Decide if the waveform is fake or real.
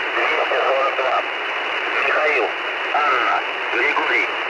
fake